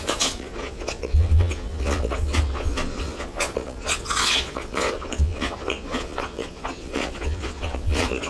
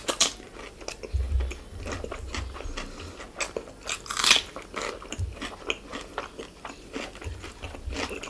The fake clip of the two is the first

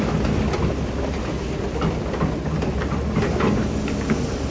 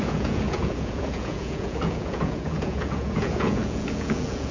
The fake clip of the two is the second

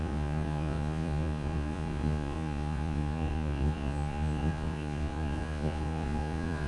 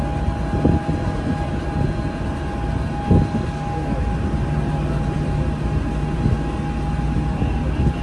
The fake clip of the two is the first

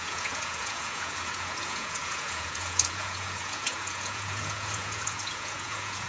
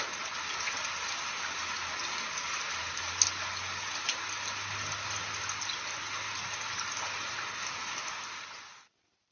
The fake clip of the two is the first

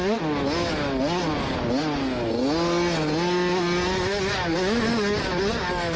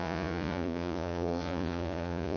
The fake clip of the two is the second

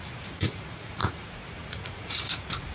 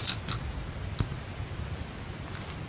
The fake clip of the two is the first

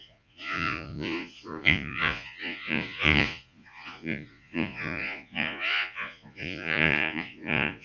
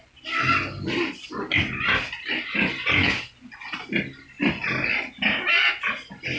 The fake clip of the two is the first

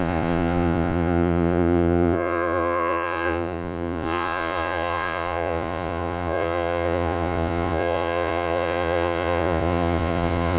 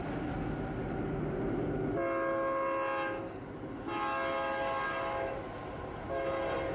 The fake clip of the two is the first